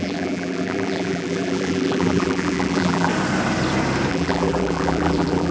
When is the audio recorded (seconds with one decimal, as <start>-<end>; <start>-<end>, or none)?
3.1-4.1